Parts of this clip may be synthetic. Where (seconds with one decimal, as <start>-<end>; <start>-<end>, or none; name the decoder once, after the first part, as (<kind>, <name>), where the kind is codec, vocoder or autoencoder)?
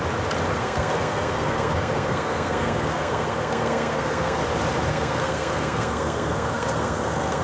0.5-4.4 (codec, SNAC); 4.9-7.4